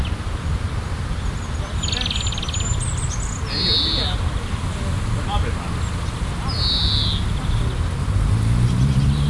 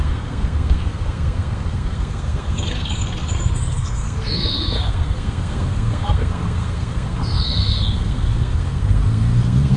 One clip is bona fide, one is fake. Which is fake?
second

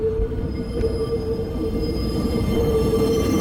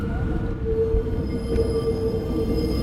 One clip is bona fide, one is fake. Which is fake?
first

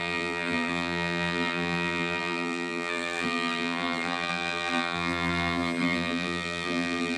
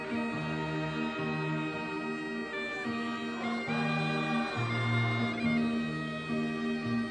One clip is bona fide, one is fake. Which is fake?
first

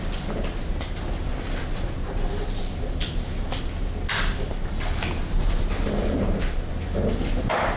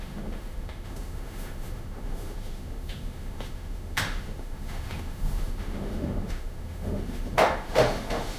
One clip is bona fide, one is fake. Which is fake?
second